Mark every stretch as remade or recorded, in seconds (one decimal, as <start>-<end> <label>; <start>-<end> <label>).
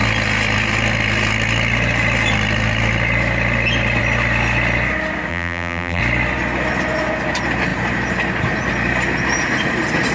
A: 0.0-5.3 recorded; 5.3-6.0 remade; 6.0-10.1 recorded